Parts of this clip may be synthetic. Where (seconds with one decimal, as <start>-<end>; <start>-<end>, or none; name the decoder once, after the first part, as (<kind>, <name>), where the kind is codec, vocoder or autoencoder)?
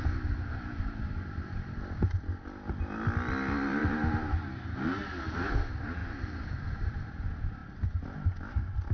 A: 3.8-5.2 (vocoder, BigVGAN v2); 6.0-6.9